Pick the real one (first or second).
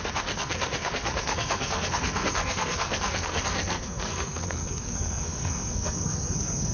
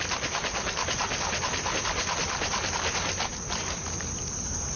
second